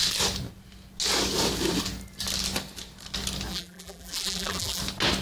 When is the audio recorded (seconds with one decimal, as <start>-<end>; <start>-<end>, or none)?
0.0-3.5; 4.8-5.2

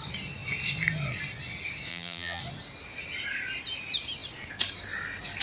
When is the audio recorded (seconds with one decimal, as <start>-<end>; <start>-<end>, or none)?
0.0-1.9; 2.4-5.4

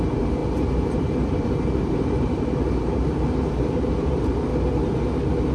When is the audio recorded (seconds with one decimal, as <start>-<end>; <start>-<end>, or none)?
4.5-5.5